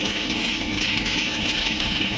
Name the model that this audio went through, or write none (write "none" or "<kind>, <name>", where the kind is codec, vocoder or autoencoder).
codec, SNAC